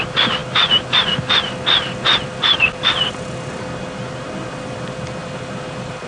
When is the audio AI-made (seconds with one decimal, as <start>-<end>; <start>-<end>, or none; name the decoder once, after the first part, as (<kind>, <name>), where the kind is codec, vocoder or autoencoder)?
5.2-6.1 (vocoder, BigVGAN v2)